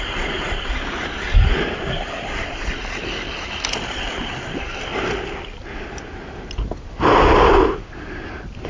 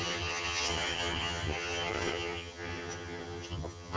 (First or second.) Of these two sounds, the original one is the first